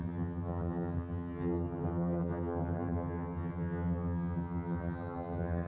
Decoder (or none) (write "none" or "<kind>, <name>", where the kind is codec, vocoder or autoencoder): vocoder, HiFi-GAN